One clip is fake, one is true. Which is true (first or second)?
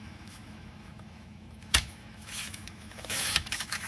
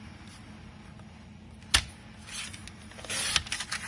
second